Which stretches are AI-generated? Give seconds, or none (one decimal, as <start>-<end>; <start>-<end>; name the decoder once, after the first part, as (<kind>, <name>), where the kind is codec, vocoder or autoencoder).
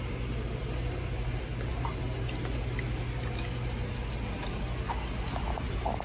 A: none